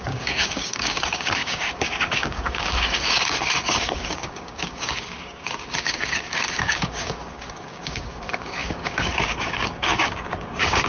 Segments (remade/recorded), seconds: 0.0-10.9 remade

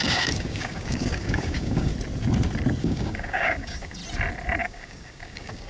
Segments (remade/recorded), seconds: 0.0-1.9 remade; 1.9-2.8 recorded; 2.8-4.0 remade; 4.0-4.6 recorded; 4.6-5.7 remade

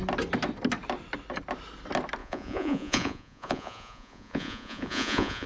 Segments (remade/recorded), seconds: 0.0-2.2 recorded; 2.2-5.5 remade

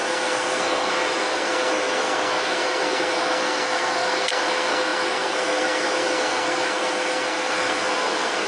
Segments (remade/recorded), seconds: 0.0-8.5 remade